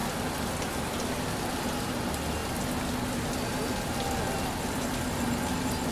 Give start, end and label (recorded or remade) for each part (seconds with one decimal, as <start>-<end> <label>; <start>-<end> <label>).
0.0-5.9 recorded